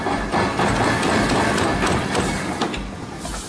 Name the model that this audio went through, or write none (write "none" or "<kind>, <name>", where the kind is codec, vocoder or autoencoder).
none